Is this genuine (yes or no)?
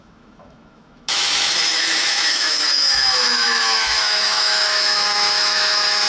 no